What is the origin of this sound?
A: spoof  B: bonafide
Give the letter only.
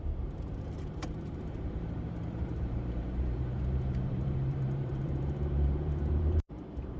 A